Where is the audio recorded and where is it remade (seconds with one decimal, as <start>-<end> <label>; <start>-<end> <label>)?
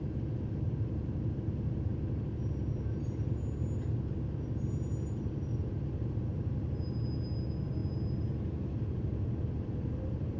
0.0-10.4 recorded